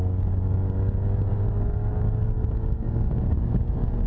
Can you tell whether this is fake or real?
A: fake